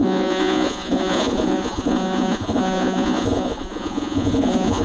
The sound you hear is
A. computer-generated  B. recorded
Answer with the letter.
A